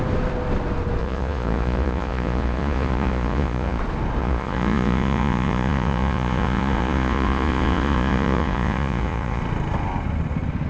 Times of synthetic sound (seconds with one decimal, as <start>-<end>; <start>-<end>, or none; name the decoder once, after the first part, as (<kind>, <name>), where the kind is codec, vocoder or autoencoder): 1.0-3.8 (vocoder, Vocos); 4.2-9.4